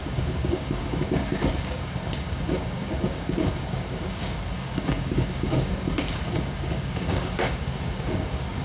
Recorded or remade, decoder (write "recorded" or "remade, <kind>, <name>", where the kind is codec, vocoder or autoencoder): remade, codec, DAC